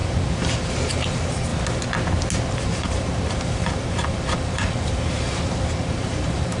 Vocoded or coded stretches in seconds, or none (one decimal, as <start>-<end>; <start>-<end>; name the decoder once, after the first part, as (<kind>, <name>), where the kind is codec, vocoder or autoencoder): 0.0-1.5 (vocoder, BigVGAN v2); 2.5-6.6